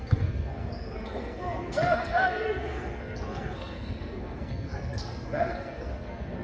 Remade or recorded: remade